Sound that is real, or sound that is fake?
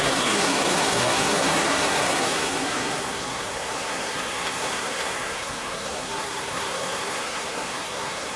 fake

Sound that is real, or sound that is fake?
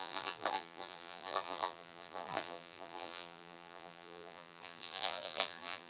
fake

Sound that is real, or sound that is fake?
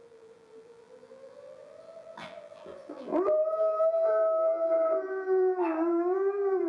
fake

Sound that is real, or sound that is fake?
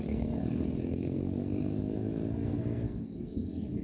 fake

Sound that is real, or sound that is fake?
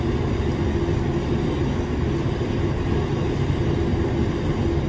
real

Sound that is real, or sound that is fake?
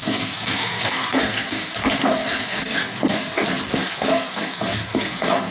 fake